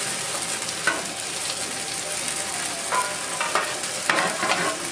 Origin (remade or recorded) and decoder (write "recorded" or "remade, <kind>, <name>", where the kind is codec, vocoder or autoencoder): recorded